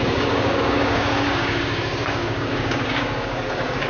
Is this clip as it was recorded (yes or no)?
no